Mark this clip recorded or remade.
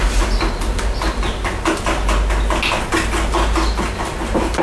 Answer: recorded